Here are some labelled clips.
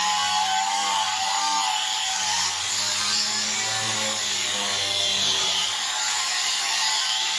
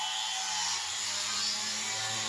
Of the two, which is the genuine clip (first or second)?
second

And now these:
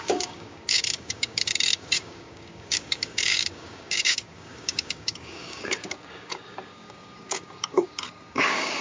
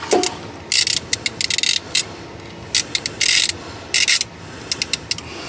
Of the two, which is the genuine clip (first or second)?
second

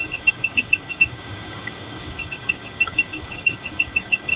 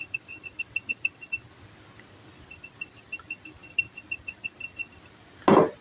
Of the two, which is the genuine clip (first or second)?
second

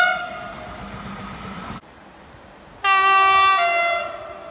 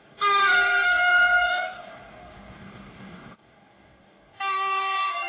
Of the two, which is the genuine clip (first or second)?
first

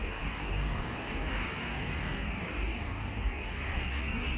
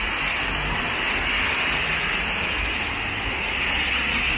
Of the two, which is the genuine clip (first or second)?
second